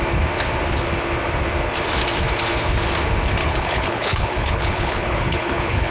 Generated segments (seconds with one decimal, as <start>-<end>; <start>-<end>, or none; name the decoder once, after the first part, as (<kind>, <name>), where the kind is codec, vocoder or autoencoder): 3.4-5.9 (codec, HILCodec)